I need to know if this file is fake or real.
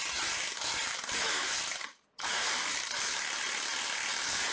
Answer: fake